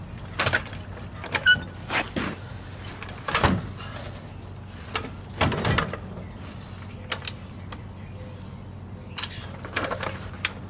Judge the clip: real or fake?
real